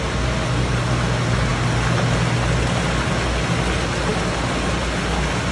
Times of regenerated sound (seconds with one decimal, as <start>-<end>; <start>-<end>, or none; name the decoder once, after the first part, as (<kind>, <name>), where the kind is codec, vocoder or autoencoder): none